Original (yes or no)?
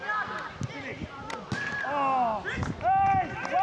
yes